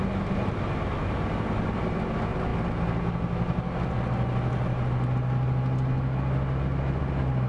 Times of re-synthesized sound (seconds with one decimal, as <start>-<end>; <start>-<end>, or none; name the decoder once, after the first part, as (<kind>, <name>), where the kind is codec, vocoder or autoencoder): none